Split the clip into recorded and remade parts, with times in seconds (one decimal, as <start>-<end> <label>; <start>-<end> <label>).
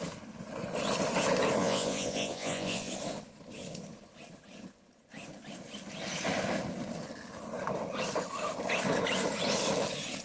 0.0-1.6 recorded; 1.6-2.9 remade; 2.9-10.2 recorded